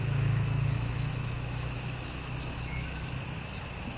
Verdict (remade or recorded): remade